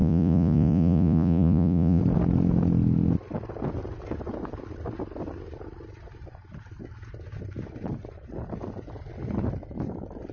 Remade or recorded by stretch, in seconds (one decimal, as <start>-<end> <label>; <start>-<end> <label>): 0.0-2.0 remade; 2.0-10.3 recorded

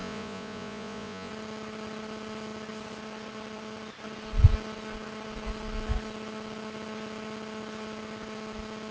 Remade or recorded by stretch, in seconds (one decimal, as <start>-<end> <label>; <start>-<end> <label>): 0.0-1.3 remade; 1.3-8.9 recorded

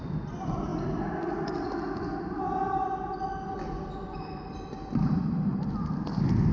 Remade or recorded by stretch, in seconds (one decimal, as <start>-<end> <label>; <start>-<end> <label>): 0.0-6.5 recorded